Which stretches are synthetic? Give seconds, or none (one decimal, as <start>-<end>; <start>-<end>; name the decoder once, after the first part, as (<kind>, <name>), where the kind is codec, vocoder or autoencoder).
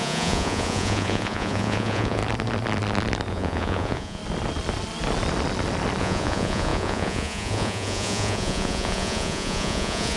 0.0-2.2 (vocoder, Vocos); 3.3-4.2; 6.0-10.2